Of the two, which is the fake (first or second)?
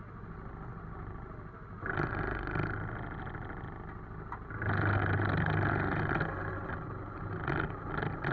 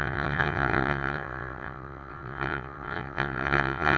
second